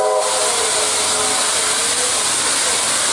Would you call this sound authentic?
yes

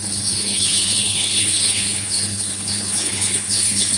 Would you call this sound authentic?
no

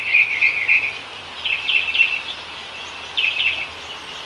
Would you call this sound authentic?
yes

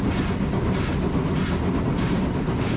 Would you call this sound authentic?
yes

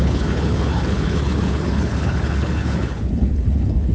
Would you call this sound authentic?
no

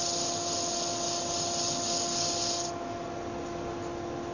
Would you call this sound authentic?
yes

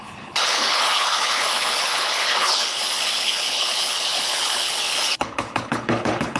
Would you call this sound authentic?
no